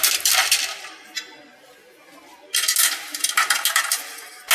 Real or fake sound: real